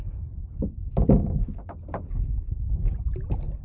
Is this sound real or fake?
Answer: real